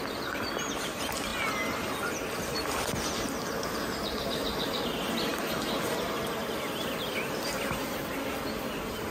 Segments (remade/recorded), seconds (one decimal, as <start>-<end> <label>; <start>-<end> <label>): 0.0-9.1 recorded